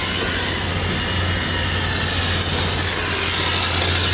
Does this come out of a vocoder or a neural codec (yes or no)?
no